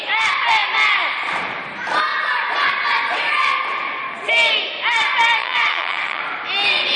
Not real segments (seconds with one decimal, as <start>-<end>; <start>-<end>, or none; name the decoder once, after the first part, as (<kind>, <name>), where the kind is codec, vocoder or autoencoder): 5.4-6.2 (vocoder, WaveNeXt)